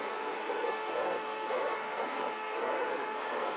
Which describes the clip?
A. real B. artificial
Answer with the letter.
B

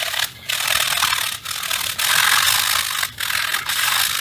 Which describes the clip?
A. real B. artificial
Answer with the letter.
A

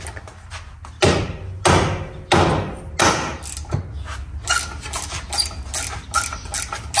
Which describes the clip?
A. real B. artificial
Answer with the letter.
A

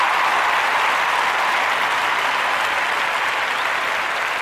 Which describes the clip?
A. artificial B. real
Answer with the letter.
B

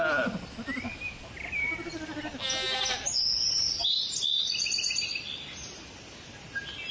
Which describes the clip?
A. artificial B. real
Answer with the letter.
B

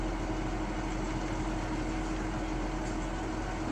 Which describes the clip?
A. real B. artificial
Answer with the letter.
A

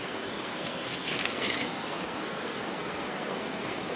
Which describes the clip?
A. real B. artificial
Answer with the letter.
B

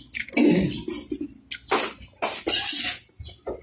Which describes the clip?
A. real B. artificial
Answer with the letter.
A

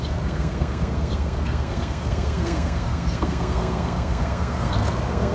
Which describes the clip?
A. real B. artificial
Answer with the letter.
B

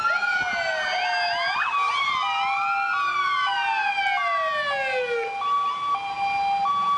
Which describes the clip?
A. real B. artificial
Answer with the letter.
A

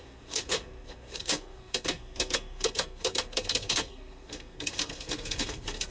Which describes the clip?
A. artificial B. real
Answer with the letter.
A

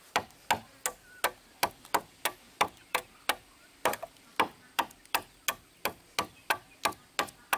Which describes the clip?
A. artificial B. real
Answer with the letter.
B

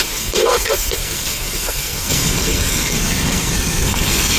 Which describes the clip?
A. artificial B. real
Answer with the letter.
A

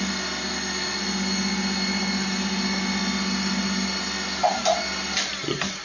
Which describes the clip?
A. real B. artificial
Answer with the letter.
A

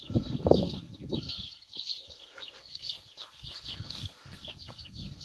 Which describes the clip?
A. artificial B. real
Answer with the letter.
A